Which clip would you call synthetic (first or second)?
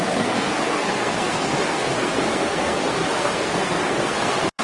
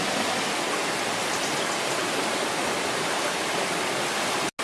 first